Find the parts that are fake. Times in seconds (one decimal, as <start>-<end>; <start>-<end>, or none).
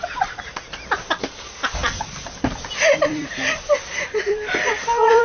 1.8-5.2